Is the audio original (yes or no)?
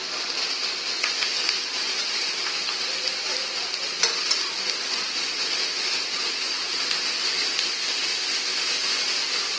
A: yes